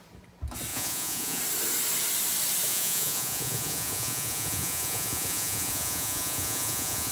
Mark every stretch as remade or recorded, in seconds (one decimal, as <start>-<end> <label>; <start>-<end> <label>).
0.0-0.7 recorded; 0.7-1.4 remade; 1.4-2.7 recorded; 2.7-7.1 remade